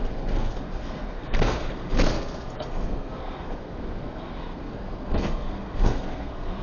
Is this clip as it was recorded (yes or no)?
no